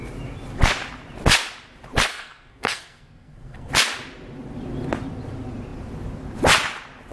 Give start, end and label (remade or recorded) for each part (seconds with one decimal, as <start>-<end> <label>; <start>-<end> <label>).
0.0-2.1 recorded; 2.1-3.7 remade; 3.7-7.1 recorded